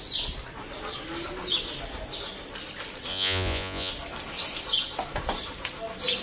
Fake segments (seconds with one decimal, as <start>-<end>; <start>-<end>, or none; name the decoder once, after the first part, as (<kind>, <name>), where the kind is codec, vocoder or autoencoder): 3.1-3.9 (vocoder, Vocos)